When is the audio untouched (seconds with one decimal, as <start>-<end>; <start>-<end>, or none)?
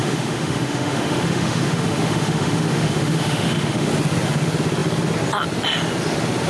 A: 3.9-6.5